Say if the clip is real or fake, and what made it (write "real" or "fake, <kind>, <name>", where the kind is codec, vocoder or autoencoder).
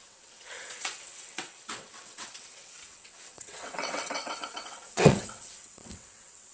fake, vocoder, WaveNeXt